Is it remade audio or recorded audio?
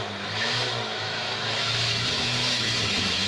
remade